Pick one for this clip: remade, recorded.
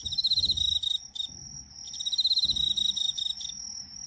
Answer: recorded